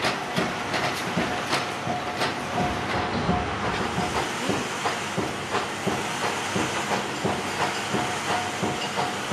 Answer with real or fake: real